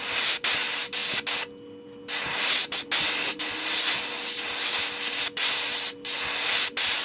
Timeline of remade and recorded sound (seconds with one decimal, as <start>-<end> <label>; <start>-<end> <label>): 0.0-7.0 recorded